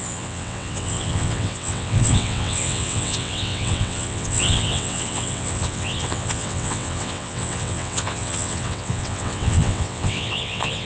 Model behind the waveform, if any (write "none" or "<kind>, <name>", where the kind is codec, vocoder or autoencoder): vocoder, WaveNeXt